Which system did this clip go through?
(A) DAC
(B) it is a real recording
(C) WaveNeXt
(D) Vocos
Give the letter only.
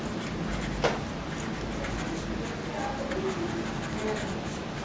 B